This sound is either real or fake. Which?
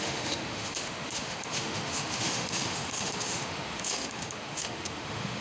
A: fake